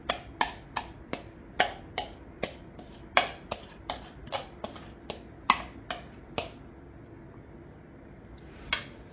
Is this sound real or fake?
real